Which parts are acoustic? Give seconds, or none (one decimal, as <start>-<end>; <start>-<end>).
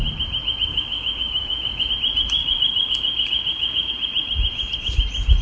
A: 0.0-0.7; 1.9-2.4; 3.9-5.4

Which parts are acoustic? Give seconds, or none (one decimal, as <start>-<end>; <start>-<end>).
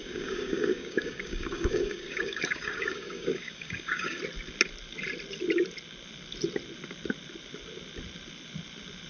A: 4.2-9.1